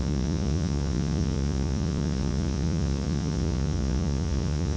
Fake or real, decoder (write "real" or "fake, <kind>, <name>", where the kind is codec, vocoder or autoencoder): fake, vocoder, Vocos